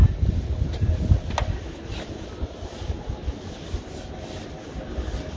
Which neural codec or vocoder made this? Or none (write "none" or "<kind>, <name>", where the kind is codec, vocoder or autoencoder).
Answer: none